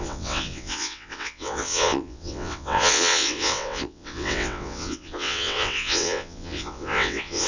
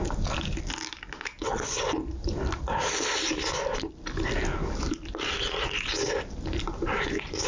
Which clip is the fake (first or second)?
first